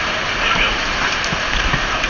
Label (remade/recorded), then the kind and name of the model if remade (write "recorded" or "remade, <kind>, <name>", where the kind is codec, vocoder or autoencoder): remade, vocoder, BigVGAN v2